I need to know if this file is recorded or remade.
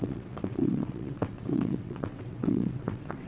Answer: remade